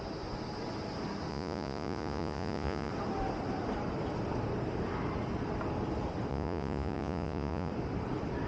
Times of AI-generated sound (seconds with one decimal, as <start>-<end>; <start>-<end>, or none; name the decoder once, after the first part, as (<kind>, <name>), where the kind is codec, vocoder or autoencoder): 1.3-2.9 (vocoder, Vocos); 6.3-7.7

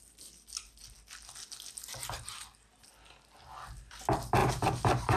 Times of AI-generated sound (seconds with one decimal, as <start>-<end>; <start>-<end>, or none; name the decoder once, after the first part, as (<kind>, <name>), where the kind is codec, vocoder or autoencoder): 4.4-5.2 (vocoder, BigVGAN v2)

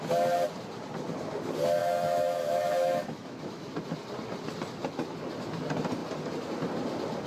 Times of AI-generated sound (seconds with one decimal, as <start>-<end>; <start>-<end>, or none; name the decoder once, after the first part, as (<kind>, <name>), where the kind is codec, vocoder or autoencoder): 1.8-3.7 (autoencoder, DAC-VAE)

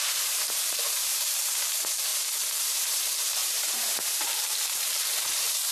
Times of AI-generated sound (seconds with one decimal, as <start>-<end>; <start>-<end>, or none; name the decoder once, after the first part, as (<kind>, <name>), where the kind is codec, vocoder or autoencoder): 0.0-2.1 (vocoder, BigVGAN v2); 2.6-5.7

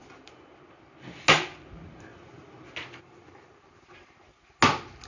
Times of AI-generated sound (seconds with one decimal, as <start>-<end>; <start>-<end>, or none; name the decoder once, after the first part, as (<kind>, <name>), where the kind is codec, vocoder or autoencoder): none

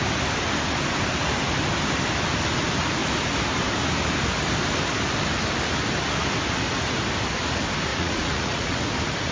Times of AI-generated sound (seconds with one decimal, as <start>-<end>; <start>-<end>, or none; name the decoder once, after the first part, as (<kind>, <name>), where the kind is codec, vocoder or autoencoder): 7.9-8.8 (vocoder, Vocos)

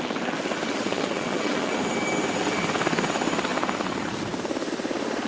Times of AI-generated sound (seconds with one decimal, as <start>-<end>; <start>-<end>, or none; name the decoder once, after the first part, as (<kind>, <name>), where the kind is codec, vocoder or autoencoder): 0.7-1.8 (vocoder, Vocos)